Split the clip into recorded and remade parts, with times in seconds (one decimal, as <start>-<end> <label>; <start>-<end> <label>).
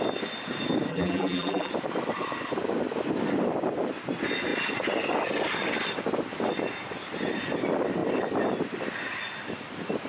0.0-0.9 recorded; 0.9-1.7 remade; 1.7-10.1 recorded